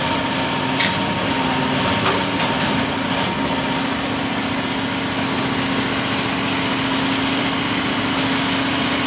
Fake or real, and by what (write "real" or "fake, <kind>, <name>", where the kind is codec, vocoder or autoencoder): real